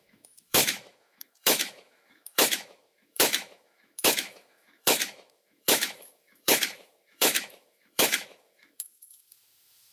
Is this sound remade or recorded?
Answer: remade